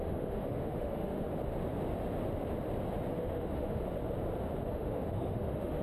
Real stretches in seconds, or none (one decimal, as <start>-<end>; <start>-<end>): 1.3-3.1; 3.8-4.7